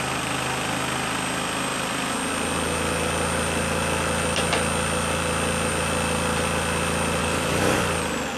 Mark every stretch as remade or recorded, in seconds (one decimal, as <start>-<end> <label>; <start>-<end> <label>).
0.0-7.2 recorded; 7.2-7.8 remade; 7.8-8.4 recorded